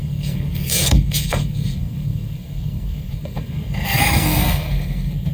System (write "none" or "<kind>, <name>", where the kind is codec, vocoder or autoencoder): codec, SNAC